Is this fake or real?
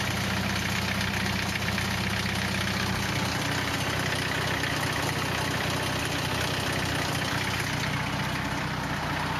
real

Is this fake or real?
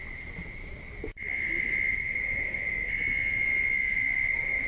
real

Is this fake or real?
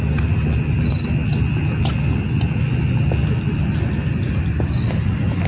real